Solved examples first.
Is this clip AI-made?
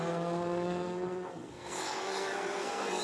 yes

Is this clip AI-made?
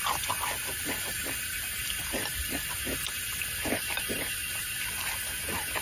no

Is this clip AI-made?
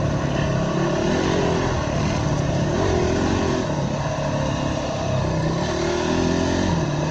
no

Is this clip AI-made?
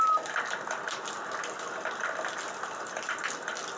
no